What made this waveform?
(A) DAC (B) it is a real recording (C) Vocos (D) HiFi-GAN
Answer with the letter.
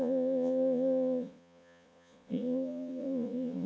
C